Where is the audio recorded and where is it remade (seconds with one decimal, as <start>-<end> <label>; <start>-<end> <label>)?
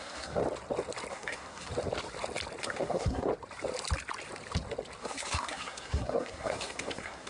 0.0-0.4 remade; 0.4-1.1 recorded; 1.1-1.7 remade; 1.7-2.6 recorded; 2.6-3.3 remade; 3.3-5.0 recorded; 5.0-7.3 remade